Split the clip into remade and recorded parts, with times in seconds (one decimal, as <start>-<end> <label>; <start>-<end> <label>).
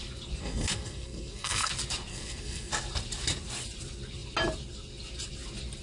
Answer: 0.0-0.4 recorded; 0.4-1.7 remade; 1.7-2.1 recorded; 2.1-2.7 remade; 2.7-5.8 recorded